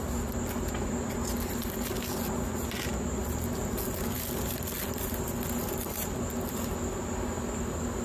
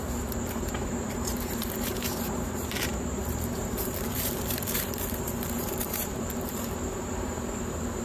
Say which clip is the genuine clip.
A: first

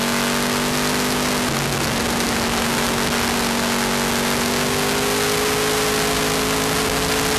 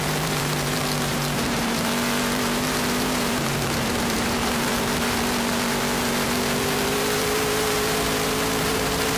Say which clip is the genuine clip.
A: first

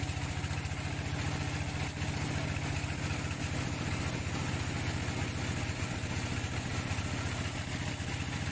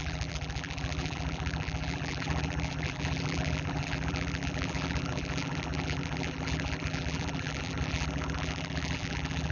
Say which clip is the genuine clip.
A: first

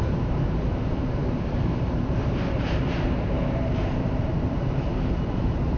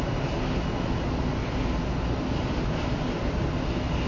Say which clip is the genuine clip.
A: second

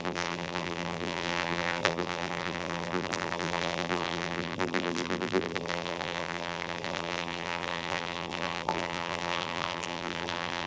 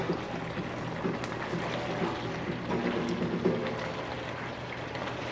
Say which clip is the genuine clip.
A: second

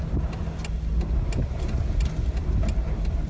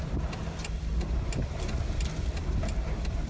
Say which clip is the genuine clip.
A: first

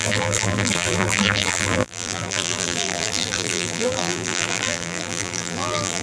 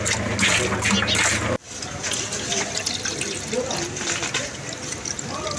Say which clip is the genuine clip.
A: second